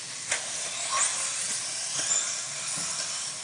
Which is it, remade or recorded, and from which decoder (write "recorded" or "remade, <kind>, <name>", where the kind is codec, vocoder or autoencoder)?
recorded